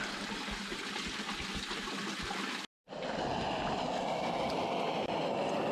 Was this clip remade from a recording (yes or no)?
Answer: no